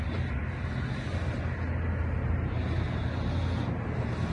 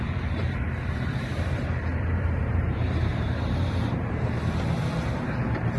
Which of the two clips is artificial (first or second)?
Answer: second